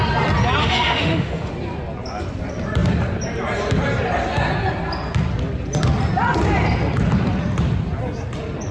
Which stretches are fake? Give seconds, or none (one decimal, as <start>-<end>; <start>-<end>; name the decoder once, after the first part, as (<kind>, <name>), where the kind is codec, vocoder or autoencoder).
0.6-1.5 (autoencoder, DAC-VAE)